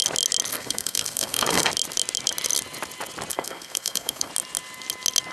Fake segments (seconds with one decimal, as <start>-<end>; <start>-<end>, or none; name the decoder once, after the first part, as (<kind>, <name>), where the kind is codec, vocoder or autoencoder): 0.5-1.7 (codec, SNAC); 3.3-4.3